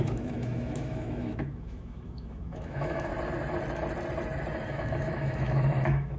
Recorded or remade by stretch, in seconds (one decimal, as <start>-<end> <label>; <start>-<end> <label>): 0.0-3.1 remade; 3.1-4.7 recorded; 4.7-6.2 remade